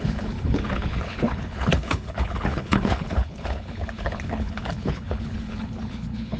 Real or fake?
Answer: fake